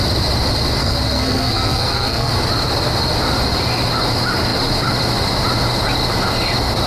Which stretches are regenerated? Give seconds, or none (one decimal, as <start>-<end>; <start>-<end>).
0.8-2.3